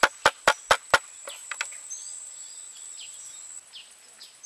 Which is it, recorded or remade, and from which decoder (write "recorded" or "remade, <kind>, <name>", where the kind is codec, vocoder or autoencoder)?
recorded